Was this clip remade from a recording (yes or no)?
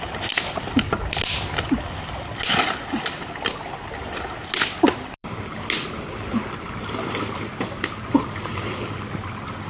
no